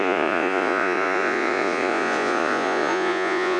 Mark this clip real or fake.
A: fake